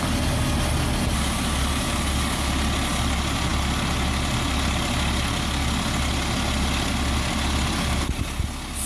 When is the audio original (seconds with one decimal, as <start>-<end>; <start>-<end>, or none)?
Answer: 0.0-8.9